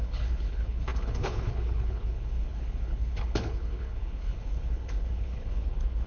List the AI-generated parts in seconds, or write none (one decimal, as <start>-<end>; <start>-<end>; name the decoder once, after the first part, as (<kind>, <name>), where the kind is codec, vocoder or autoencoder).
0.0-6.1 (codec, HILCodec)